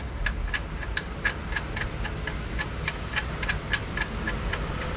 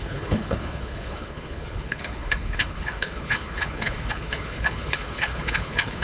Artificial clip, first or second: second